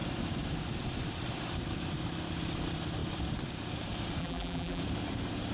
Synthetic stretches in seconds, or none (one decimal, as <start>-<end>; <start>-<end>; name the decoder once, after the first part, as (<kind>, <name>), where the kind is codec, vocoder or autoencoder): 4.2-4.8 (vocoder, BigVGAN v2)